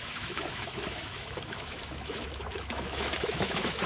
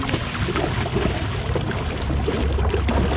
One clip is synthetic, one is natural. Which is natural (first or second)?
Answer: second